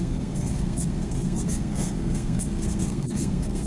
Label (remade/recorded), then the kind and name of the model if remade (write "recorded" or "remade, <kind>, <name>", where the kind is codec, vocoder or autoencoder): remade, codec, SNAC